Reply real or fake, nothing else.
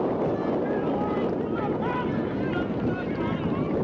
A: real